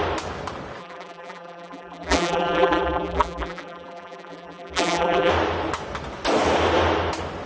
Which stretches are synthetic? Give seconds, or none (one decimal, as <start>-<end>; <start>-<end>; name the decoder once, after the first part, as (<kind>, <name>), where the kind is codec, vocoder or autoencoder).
0.8-5.3 (vocoder, BigVGAN v2)